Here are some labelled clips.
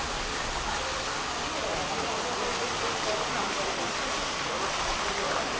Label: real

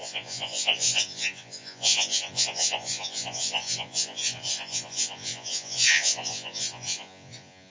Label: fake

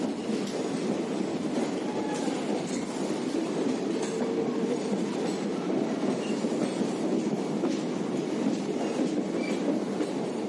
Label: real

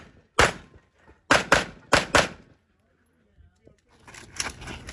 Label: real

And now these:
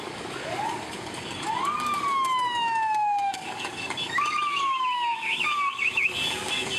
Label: fake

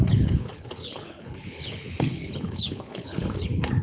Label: fake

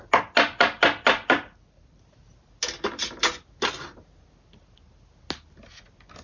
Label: real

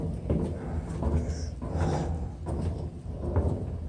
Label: real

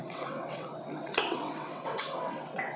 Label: fake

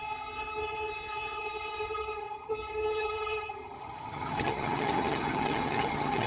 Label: fake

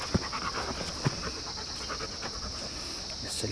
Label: real